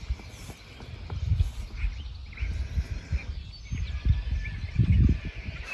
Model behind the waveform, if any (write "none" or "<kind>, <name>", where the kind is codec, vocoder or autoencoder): none